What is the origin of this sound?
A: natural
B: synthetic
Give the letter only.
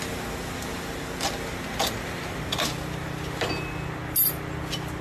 A